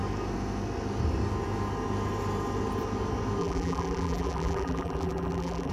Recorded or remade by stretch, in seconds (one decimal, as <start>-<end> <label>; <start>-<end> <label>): 0.0-3.4 recorded; 3.4-5.7 remade